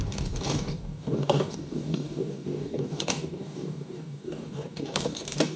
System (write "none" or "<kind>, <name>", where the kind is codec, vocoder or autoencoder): codec, DAC